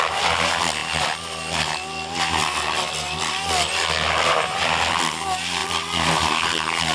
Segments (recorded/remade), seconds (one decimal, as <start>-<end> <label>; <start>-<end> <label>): 0.0-6.9 recorded